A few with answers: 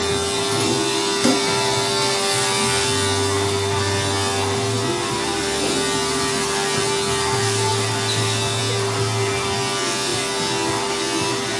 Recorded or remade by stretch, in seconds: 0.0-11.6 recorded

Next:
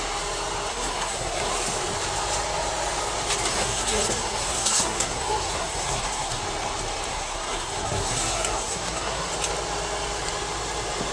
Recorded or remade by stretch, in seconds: 0.0-0.7 recorded; 0.7-1.5 remade; 1.5-3.5 recorded; 3.5-6.4 remade; 6.4-7.1 recorded; 7.1-9.3 remade; 9.3-11.1 recorded

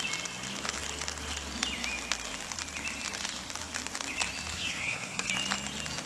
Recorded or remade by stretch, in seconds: 0.0-4.5 recorded; 4.5-5.3 remade; 5.3-6.1 recorded

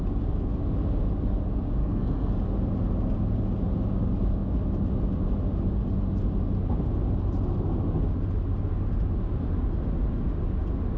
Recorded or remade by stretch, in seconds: 0.0-1.8 recorded; 1.8-2.3 remade; 2.3-11.0 recorded

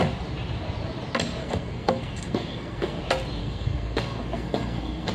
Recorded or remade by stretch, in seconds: 0.0-1.4 recorded; 1.4-3.0 remade; 3.0-3.4 recorded; 3.4-5.1 remade

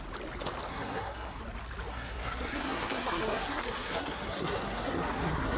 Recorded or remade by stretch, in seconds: 0.0-0.7 recorded; 0.7-1.4 remade; 1.4-1.9 recorded; 1.9-5.6 remade

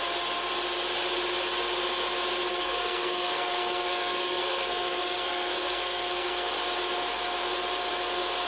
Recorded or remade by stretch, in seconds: 0.0-2.5 recorded; 2.5-6.5 remade; 6.5-8.5 recorded

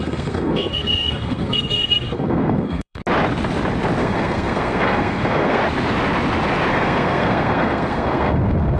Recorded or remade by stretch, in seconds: 0.0-3.0 remade; 3.0-4.0 recorded; 4.0-5.6 remade; 5.6-6.7 recorded; 6.7-8.8 remade